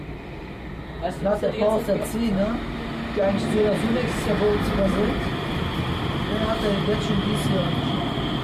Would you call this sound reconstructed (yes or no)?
no